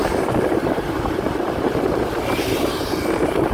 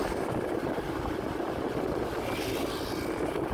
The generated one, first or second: first